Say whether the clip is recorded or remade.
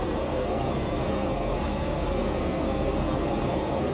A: remade